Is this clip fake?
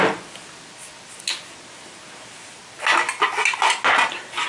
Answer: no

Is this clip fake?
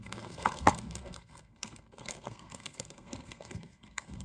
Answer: yes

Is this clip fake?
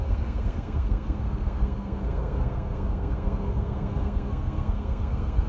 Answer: yes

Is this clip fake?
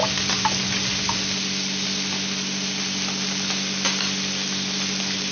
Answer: no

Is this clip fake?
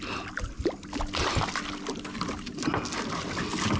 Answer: no